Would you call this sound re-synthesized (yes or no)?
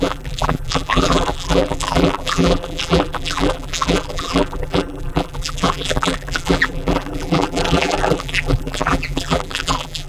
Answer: yes